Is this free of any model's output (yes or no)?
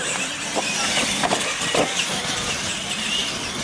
no